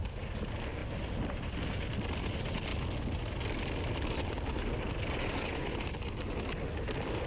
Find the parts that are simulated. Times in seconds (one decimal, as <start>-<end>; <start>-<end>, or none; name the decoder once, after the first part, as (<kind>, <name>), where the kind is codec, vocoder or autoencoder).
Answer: none